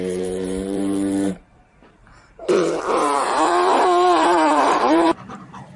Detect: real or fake fake